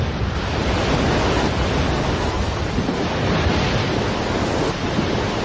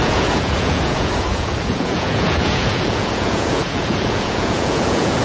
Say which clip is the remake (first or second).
second